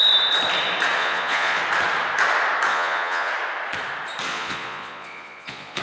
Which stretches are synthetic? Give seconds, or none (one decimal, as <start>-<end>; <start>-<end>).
1.0-1.6; 2.7-3.3; 4.3-5.8